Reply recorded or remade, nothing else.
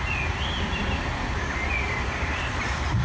recorded